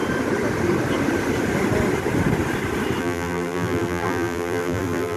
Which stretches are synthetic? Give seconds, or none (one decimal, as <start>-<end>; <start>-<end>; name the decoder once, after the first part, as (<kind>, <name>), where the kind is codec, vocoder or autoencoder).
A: 3.0-5.2 (vocoder, BigVGAN v2)